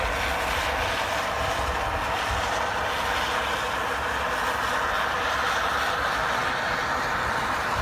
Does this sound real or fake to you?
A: real